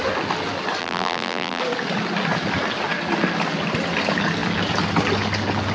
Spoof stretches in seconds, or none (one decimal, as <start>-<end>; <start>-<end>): 0.8-1.6